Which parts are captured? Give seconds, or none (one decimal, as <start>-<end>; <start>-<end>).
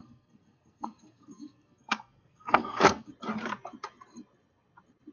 3.1-5.1